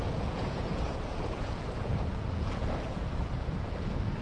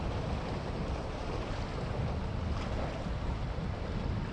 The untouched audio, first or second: second